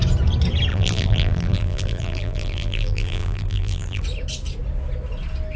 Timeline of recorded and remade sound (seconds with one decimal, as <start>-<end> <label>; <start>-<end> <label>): 0.0-0.7 recorded; 0.7-4.0 remade; 4.0-5.6 recorded